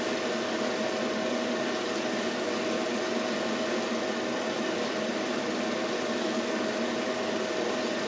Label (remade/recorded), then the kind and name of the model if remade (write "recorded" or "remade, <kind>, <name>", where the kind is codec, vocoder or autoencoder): recorded